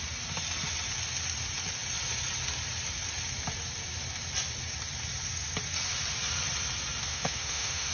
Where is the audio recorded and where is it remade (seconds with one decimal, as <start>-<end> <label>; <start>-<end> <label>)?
0.0-7.1 recorded; 7.1-7.9 remade